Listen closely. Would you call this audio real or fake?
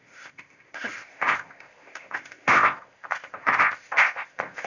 fake